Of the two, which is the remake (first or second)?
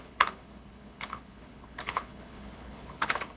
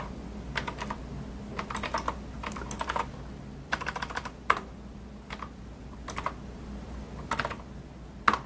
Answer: first